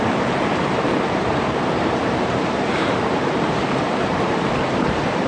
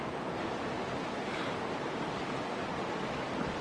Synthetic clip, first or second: first